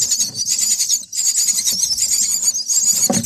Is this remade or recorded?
recorded